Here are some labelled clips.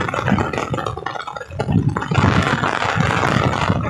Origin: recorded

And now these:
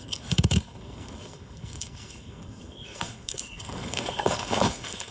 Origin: remade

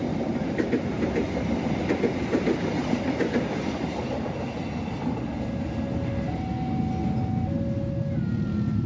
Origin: recorded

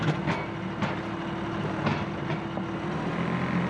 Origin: recorded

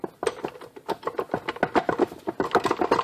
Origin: recorded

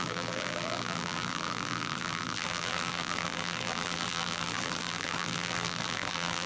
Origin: remade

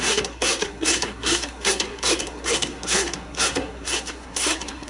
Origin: remade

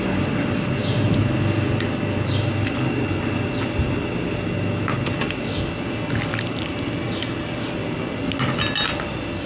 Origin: recorded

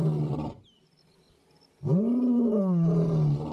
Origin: recorded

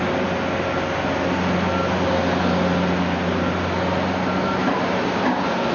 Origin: recorded